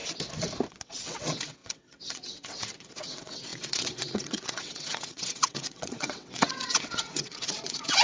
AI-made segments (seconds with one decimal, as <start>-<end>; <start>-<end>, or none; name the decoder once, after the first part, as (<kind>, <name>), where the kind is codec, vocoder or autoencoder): 0.7-8.0 (vocoder, WaveNeXt)